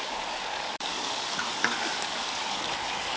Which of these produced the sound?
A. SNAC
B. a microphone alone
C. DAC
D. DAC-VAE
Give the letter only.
C